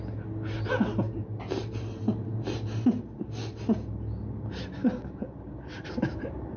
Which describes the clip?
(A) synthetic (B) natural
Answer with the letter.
B